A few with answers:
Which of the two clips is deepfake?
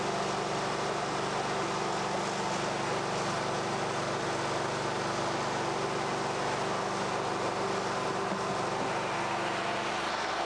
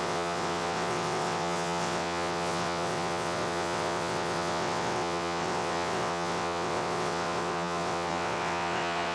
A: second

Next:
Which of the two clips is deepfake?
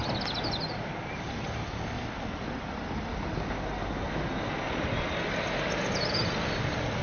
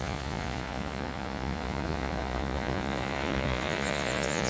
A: second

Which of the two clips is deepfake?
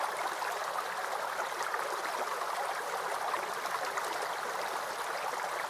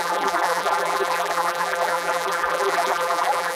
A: second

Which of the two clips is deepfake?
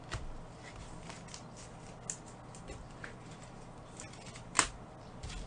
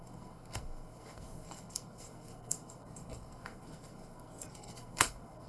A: second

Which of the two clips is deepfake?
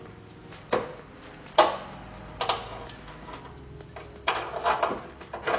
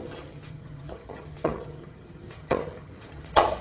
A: second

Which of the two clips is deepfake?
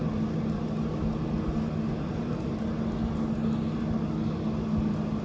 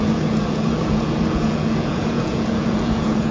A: second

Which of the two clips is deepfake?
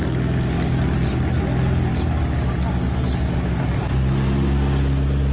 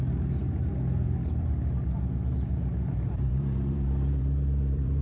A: second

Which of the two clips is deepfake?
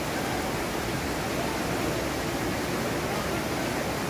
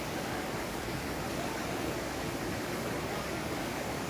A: second